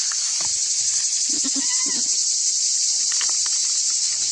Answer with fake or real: real